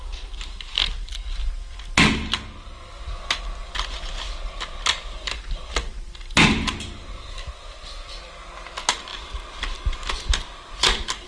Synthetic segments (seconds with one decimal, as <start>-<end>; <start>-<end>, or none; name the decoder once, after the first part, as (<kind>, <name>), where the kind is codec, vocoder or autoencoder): none